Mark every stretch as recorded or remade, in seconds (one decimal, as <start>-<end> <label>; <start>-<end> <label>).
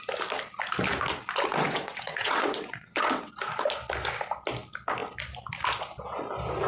0.0-1.5 recorded; 1.5-3.3 remade; 3.3-6.7 recorded